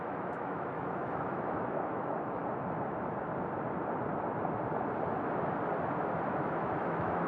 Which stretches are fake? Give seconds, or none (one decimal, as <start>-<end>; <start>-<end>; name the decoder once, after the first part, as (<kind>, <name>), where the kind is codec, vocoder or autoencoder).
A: 0.0-2.4 (autoencoder, DAC-VAE); 6.3-7.3